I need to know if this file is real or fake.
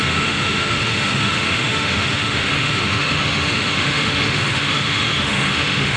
fake